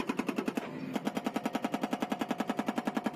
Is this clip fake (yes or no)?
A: yes